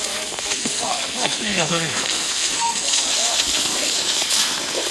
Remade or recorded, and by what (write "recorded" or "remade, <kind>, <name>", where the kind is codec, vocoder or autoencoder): remade, codec, SNAC